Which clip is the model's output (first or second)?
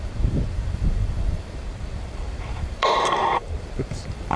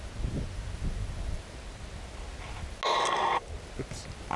first